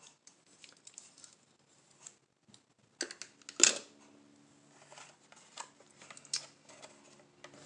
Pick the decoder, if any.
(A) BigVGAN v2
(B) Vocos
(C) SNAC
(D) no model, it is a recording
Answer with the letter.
D